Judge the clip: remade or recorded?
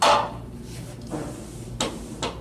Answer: recorded